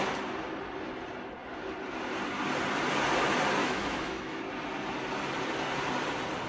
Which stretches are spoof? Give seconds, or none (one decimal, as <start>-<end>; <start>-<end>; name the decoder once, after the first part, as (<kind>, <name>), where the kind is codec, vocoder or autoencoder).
3.6-4.4 (autoencoder, DAC-VAE)